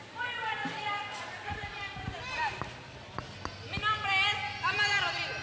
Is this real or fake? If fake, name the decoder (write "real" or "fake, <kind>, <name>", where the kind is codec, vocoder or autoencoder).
real